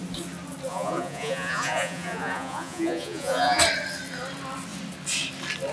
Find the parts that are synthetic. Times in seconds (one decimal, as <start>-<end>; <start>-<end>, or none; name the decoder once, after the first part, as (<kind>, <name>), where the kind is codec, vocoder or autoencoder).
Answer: 0.7-3.6 (vocoder, Vocos)